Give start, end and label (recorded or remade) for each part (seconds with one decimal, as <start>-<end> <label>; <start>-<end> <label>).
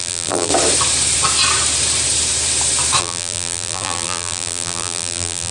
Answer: 0.0-0.5 remade; 0.5-3.0 recorded; 3.0-5.5 remade